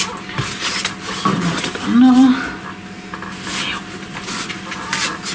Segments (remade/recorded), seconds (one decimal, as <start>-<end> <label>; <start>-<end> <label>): 0.0-5.3 recorded

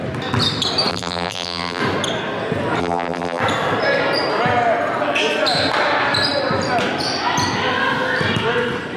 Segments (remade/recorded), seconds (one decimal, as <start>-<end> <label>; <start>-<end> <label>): 0.0-0.9 recorded; 0.9-1.8 remade; 1.8-2.8 recorded; 2.8-3.4 remade; 3.4-9.0 recorded

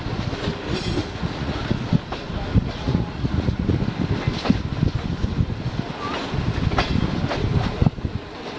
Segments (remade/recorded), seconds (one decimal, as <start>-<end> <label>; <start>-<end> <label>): 0.0-1.0 recorded; 1.0-1.6 remade; 1.6-2.5 recorded; 2.5-3.8 remade; 3.8-8.6 recorded

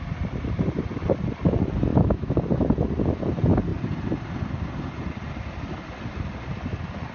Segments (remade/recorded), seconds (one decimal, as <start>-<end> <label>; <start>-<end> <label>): 0.0-1.9 recorded; 1.9-2.4 remade; 2.4-7.1 recorded

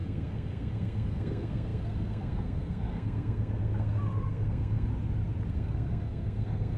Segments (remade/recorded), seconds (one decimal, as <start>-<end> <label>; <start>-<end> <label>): 0.0-4.9 remade; 4.9-5.5 recorded; 5.5-6.8 remade

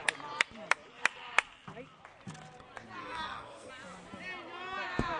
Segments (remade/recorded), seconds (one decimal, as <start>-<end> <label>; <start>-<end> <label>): 0.0-3.0 recorded; 3.0-3.7 remade; 3.7-5.2 recorded

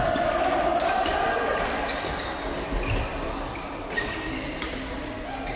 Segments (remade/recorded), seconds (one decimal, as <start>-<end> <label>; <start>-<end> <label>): 0.0-5.6 recorded

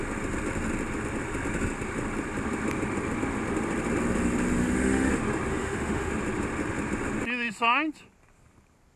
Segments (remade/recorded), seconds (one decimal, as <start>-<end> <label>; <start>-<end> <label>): 0.0-4.6 recorded; 4.6-5.1 remade; 5.1-5.5 recorded; 5.5-6.1 remade; 6.1-9.0 recorded